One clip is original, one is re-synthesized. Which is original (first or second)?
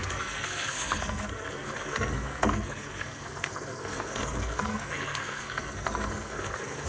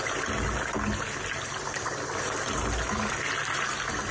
second